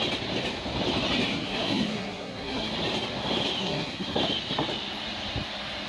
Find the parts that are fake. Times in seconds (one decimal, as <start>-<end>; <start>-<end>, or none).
1.3-2.7; 3.6-4.2